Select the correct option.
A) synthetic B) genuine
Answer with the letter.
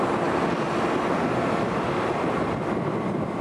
B